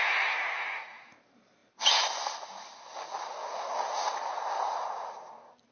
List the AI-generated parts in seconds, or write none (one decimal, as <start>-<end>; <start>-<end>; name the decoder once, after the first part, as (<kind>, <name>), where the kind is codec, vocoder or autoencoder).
none